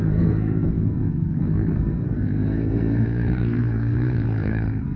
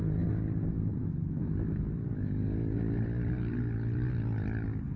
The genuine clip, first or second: second